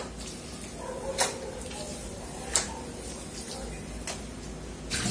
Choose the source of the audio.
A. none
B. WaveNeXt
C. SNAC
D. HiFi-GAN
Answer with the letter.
A